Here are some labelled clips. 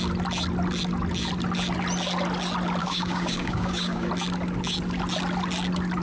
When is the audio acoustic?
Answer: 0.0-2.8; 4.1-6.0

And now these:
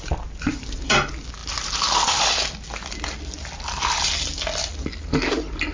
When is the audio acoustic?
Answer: 0.0-5.7

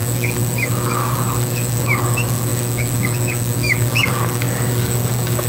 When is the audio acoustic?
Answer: none

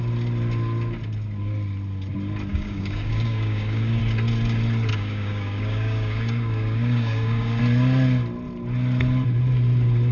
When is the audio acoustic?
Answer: 0.0-2.5; 4.0-4.9; 7.6-10.1

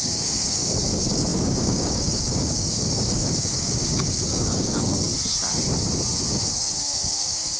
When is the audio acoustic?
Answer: 5.1-6.3

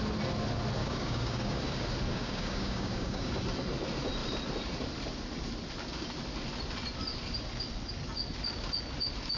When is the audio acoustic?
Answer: 0.0-0.8; 1.6-2.1; 3.3-9.4

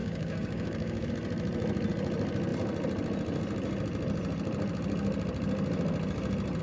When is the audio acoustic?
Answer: 1.1-6.6